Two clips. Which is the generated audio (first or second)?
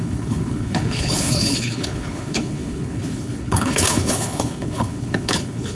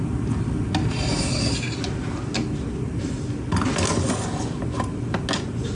first